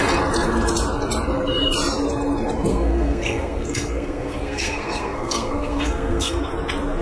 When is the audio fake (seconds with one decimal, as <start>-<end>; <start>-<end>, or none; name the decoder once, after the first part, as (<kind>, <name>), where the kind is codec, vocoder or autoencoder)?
2.7-6.5 (codec, SNAC)